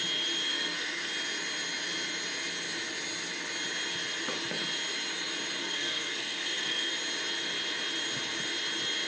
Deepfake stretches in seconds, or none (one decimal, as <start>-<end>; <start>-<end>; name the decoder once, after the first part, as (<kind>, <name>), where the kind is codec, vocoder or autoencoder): 0.5-1.1 (codec, SNAC); 5.6-6.9